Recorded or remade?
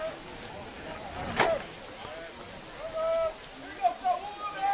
recorded